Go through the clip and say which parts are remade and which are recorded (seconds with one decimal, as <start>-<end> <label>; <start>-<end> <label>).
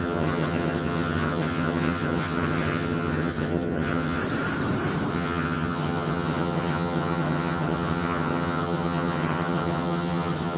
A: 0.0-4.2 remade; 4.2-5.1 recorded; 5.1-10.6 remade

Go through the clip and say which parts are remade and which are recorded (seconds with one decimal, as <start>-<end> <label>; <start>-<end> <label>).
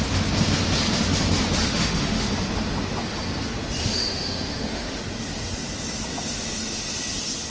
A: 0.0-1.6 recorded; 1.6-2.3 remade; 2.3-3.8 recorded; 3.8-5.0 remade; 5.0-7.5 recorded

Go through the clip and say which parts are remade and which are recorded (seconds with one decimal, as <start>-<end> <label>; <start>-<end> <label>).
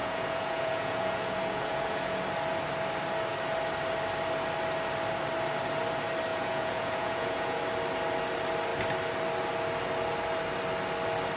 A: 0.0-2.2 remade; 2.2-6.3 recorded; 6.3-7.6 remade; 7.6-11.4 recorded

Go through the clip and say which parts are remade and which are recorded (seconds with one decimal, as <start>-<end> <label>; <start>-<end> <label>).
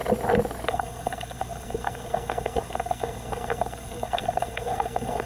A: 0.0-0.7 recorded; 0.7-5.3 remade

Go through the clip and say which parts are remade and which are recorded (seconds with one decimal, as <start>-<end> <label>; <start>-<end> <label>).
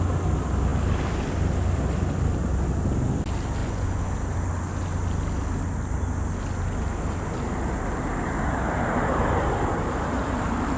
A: 0.0-3.6 recorded; 3.6-4.1 remade; 4.1-10.8 recorded